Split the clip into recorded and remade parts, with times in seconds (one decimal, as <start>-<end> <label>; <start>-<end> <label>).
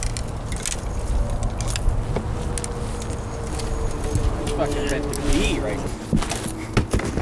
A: 0.0-7.2 recorded